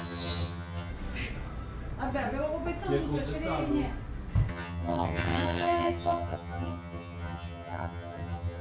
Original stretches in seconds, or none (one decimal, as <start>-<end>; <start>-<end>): 0.9-4.5